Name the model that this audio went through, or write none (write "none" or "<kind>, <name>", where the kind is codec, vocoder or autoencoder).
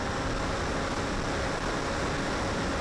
none